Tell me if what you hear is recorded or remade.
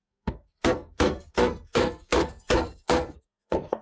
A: remade